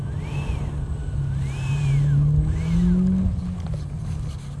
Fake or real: real